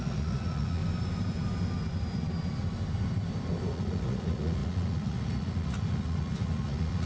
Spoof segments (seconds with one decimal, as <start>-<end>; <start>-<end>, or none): 0.0-0.8; 3.7-7.1